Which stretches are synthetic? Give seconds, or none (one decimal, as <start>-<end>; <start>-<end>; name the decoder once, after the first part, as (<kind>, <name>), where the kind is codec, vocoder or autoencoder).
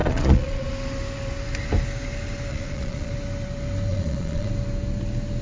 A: 0.0-0.7 (vocoder, Vocos); 2.5-3.1; 3.9-4.5